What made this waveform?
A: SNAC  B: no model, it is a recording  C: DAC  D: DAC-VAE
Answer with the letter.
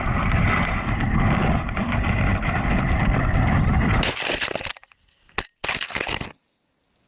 B